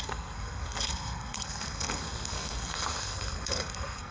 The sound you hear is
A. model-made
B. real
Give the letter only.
A